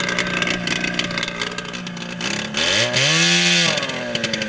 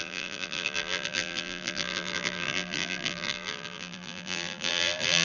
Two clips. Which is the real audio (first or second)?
first